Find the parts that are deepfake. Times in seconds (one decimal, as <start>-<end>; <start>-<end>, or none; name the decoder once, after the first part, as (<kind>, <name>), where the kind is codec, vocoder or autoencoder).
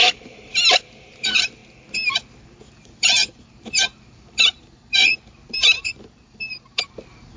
0.9-1.6 (vocoder, BigVGAN v2); 2.8-5.9; 6.5-7.4